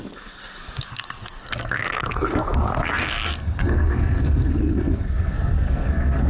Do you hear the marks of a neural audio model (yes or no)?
yes